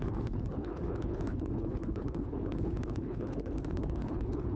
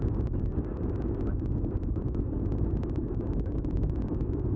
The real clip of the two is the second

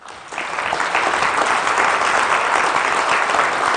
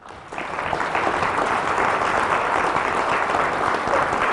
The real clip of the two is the first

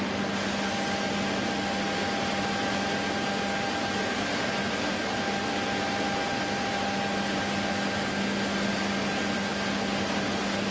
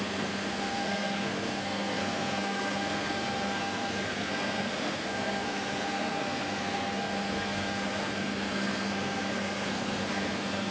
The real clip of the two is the first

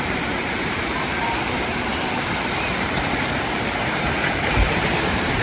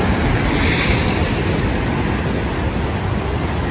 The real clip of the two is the second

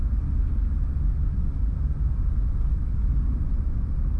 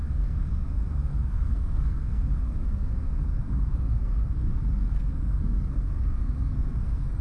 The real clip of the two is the first